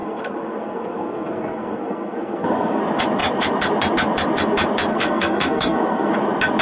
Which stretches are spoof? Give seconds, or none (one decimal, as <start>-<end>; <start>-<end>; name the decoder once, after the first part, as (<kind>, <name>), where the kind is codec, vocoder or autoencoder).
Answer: 0.0-2.8 (codec, SNAC); 4.9-6.1